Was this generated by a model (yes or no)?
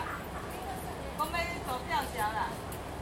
no